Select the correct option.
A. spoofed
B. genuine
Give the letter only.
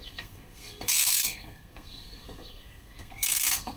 A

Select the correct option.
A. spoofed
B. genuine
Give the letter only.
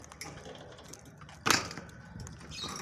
B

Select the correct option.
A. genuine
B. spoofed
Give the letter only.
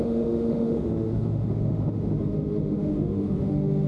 B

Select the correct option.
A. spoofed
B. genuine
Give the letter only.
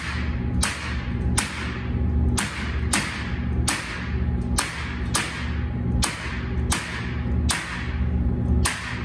B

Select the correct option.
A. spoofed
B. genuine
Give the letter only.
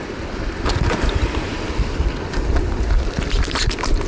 B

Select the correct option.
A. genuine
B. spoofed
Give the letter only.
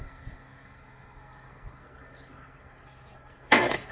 B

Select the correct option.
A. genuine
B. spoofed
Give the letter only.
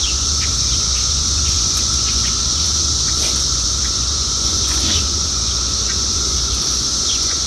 B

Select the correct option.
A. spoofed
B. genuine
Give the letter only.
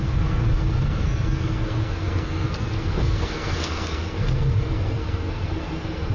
A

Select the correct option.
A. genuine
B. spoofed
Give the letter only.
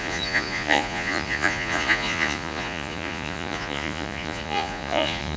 B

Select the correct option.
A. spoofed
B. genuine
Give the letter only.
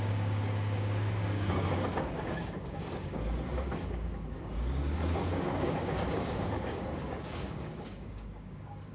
A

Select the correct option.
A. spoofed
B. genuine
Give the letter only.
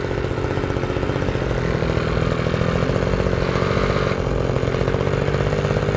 B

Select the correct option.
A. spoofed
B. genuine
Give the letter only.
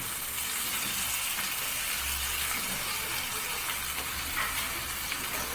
B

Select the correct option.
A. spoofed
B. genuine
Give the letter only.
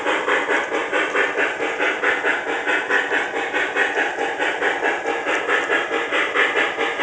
B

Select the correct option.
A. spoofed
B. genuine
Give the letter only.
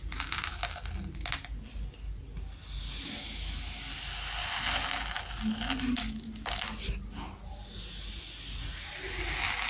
B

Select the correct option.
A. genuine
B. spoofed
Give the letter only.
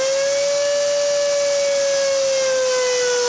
A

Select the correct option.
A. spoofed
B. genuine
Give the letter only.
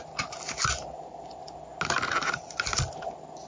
B